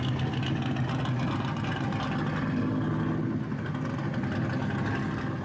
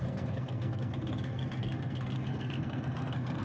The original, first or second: first